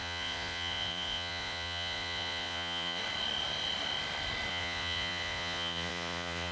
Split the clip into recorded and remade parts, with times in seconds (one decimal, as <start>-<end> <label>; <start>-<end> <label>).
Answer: 0.0-3.0 remade; 3.0-4.5 recorded; 4.5-6.5 remade